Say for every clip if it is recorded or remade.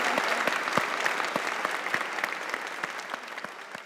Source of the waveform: recorded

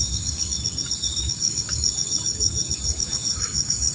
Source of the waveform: remade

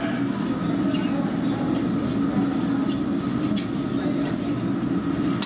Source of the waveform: recorded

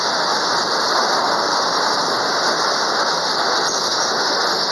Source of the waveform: recorded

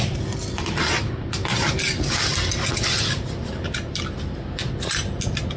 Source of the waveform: recorded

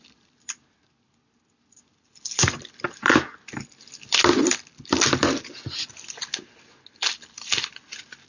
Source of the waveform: recorded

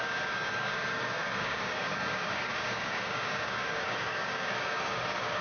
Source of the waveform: remade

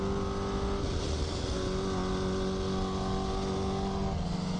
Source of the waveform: recorded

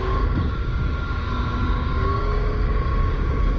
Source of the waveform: remade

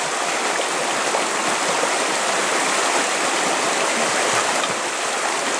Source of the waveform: recorded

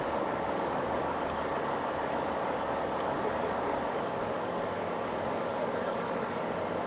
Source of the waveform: remade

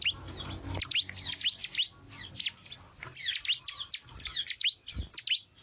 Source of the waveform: recorded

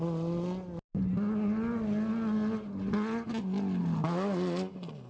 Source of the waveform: recorded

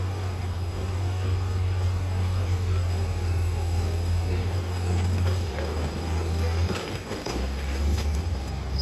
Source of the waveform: remade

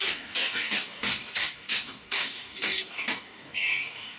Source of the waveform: remade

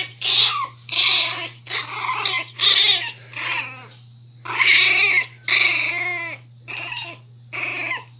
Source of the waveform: recorded